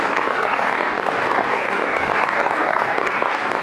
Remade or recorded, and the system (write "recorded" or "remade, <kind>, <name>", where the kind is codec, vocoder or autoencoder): remade, codec, DAC